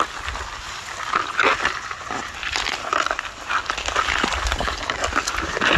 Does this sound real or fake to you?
real